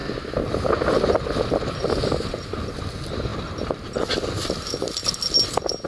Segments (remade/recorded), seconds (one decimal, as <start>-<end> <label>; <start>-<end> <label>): 0.0-5.9 recorded